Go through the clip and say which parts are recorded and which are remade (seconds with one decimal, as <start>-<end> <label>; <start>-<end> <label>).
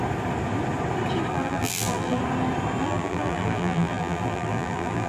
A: 0.0-1.3 recorded; 1.3-2.2 remade; 2.2-2.8 recorded; 2.8-5.1 remade